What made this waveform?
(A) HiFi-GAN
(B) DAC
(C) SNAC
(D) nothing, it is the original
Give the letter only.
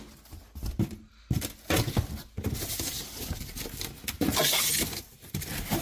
D